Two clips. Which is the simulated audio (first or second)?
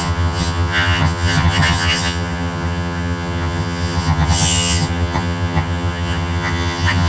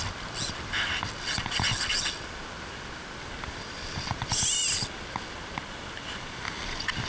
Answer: first